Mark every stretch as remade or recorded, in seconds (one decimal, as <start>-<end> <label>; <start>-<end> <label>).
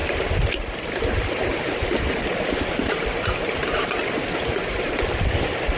0.0-5.8 recorded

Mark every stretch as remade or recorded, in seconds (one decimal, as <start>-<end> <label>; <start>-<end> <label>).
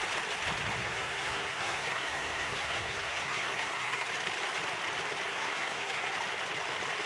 0.0-0.8 recorded; 0.8-4.1 remade; 4.1-5.3 recorded; 5.3-6.1 remade; 6.1-7.1 recorded